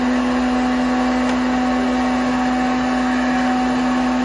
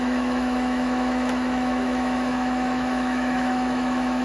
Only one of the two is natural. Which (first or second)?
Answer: first